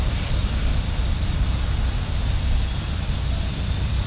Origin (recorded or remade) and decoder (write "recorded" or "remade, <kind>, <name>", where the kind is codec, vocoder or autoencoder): remade, vocoder, BigVGAN v2